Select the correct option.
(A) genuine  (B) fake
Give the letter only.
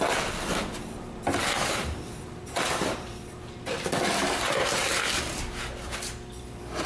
B